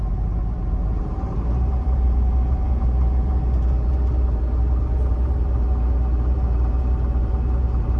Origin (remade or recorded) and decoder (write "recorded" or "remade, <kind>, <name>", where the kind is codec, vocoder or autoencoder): remade, vocoder, BigVGAN v2